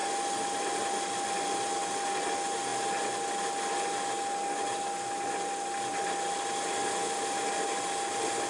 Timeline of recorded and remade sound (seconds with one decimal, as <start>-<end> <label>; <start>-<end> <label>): 0.0-8.5 recorded